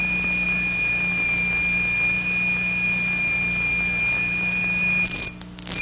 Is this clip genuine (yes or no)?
yes